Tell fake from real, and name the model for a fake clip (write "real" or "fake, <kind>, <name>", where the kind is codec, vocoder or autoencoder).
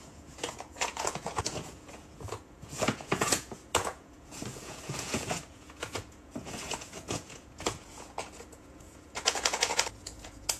fake, vocoder, Vocos